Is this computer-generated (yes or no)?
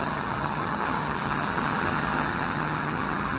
yes